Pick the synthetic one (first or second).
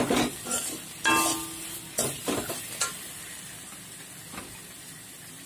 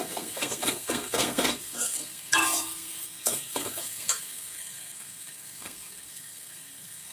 second